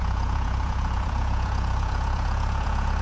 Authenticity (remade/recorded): remade